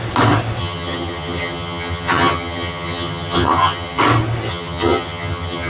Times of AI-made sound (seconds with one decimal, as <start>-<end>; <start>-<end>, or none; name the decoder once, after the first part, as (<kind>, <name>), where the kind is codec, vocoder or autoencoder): 0.6-4.0 (vocoder, HiFi-GAN); 4.5-5.7

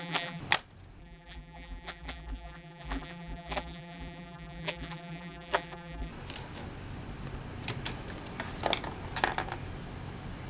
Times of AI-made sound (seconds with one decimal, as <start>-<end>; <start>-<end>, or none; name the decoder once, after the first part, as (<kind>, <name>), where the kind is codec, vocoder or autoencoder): 0.0-0.4 (vocoder, BigVGAN v2); 1.0-6.1

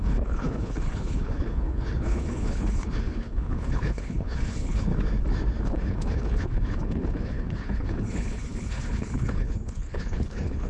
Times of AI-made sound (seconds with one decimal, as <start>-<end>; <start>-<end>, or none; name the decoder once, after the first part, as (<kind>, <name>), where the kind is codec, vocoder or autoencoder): 0.0-4.9 (codec, HILCodec); 5.6-10.7